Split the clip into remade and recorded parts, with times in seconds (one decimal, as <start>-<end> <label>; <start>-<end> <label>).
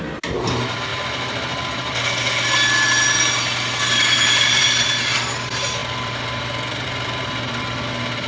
0.0-8.3 recorded